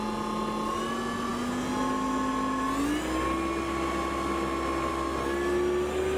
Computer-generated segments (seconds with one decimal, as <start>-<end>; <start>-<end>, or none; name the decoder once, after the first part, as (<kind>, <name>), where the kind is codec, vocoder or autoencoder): none